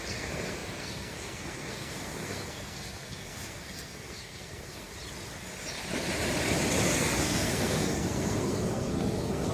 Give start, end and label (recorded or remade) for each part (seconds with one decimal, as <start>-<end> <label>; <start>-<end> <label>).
0.0-4.9 remade; 4.9-6.9 recorded; 6.9-9.5 remade